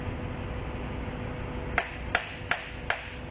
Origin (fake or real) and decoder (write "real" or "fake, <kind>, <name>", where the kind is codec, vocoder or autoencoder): real